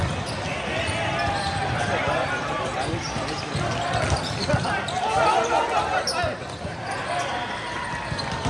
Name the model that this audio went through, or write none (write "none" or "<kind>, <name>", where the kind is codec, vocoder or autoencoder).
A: none